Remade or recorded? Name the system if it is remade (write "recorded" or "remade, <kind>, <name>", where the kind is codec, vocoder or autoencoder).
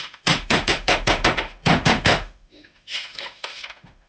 remade, autoencoder, DAC-VAE